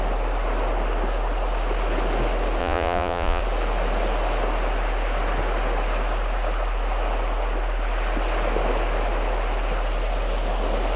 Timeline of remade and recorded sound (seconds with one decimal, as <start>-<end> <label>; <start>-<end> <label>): 0.0-2.6 recorded; 2.6-3.4 remade; 3.4-11.0 recorded